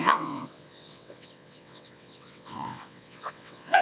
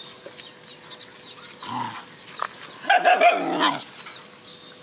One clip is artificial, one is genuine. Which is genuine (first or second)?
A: second